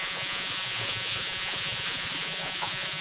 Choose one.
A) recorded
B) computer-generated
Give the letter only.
B